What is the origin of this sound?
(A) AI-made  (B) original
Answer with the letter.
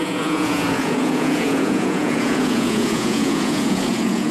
A